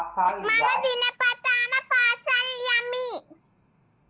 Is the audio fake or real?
real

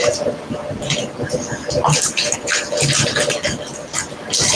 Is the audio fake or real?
real